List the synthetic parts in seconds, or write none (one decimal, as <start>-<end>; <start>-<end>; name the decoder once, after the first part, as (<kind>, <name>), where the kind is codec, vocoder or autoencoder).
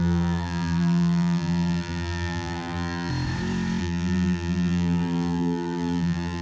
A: 0.0-3.1 (vocoder, BigVGAN v2); 3.8-6.4